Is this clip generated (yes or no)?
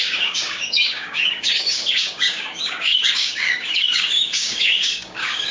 yes